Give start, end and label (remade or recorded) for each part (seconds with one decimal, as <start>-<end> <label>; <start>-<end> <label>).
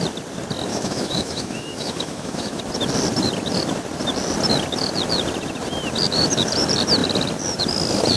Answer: 0.0-0.7 recorded; 0.7-2.6 remade; 2.6-8.2 recorded